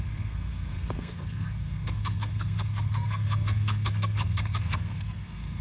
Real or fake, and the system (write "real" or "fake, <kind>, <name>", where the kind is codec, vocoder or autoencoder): fake, codec, SNAC